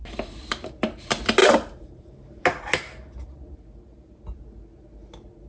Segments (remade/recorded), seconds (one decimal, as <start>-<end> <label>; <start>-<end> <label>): 0.0-1.4 recorded; 1.4-2.4 remade; 2.4-5.5 recorded